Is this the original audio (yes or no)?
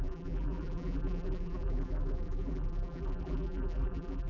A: no